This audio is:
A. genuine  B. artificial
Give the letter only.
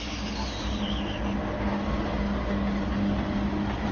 A